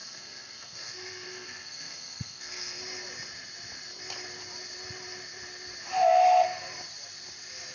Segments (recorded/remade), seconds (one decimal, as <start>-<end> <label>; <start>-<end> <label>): 0.0-2.8 remade; 2.8-7.7 recorded